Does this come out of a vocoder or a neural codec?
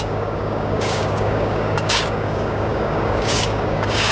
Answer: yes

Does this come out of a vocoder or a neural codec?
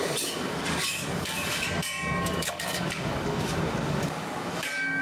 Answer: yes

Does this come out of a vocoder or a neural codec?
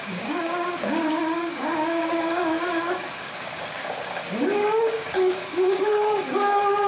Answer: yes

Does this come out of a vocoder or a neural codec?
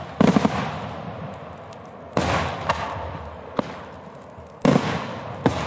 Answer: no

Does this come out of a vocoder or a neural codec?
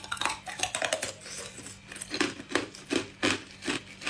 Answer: no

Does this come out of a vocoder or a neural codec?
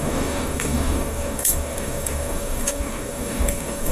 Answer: yes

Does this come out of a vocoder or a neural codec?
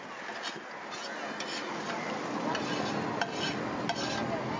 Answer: no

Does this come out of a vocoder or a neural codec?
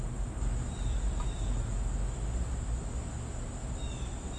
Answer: no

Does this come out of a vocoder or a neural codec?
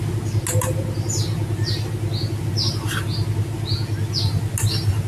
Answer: no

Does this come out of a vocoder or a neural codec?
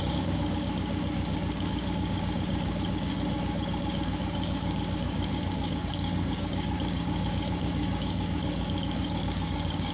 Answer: yes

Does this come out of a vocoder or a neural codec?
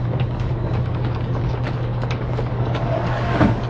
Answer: yes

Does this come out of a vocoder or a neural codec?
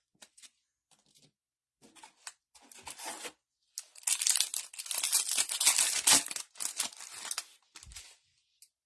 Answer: no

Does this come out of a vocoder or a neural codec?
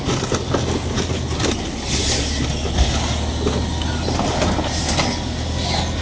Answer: no